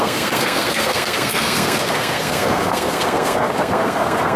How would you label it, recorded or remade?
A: remade